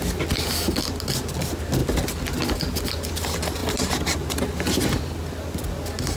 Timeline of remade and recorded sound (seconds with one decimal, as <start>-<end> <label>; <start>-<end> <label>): 0.0-6.2 recorded